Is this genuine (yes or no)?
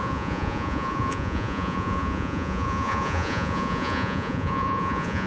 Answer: no